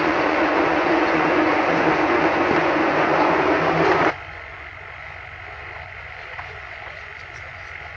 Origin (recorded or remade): remade